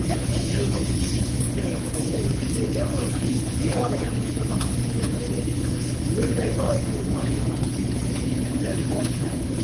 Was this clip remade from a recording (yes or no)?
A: yes